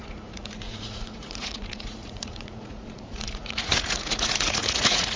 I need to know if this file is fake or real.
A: fake